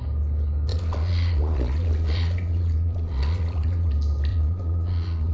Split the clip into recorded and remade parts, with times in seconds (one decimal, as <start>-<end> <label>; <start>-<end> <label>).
0.0-0.7 recorded; 0.7-3.9 remade; 3.9-4.3 recorded; 4.3-5.3 remade